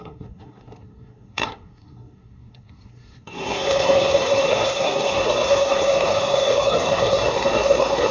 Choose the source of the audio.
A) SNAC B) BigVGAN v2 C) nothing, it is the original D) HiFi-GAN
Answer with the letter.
A